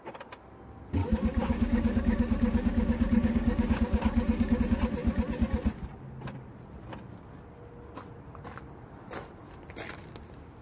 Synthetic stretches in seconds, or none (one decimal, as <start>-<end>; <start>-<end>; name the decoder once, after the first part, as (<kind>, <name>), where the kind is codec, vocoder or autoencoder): 1.0-4.6 (codec, DAC)